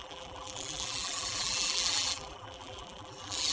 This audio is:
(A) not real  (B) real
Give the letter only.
A